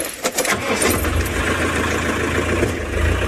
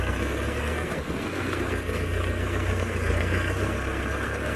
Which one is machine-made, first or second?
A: second